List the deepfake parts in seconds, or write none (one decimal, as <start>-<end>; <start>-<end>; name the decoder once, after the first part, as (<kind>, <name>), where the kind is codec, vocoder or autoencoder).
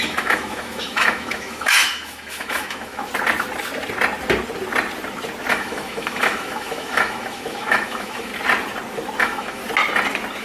0.0-3.1 (autoencoder, DAC-VAE); 5.5-8.3; 9.2-9.6